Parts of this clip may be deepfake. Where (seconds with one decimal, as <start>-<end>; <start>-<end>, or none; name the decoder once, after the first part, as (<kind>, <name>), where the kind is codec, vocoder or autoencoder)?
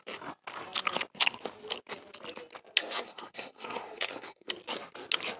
2.8-4.5 (codec, SNAC)